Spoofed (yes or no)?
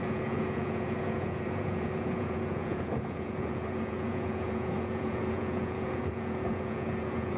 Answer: yes